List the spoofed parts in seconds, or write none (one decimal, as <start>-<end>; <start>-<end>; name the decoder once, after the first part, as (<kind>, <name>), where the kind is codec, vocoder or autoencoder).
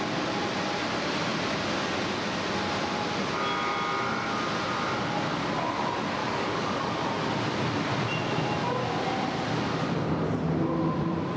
6.2-6.9 (codec, DAC)